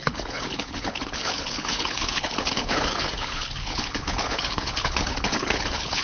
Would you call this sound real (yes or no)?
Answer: no